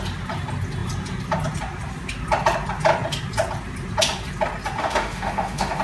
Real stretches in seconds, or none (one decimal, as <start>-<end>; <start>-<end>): 0.0-4.8